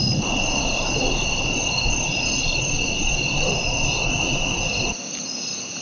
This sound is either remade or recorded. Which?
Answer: recorded